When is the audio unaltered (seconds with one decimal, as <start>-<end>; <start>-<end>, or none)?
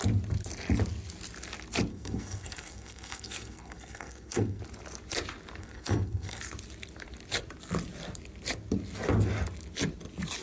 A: 0.0-1.9; 4.6-5.6; 6.4-10.4